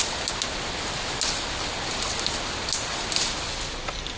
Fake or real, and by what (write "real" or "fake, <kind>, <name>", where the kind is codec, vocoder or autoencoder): real